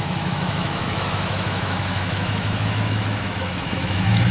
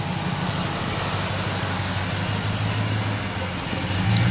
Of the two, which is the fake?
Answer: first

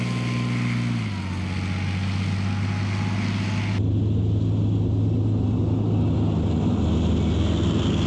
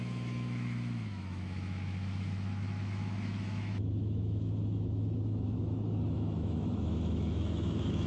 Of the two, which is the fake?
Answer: second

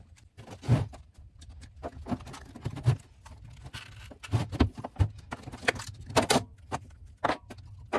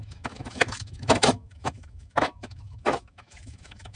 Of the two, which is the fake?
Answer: second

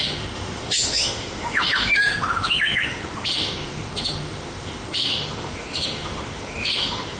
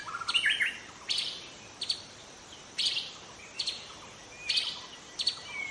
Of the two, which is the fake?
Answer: first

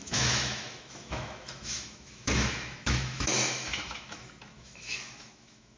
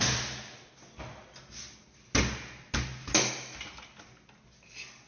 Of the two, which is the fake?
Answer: first